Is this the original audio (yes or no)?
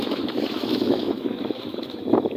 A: no